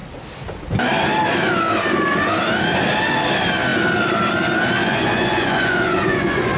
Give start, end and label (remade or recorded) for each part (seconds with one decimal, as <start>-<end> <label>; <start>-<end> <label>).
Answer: 0.0-4.8 recorded; 4.8-6.6 remade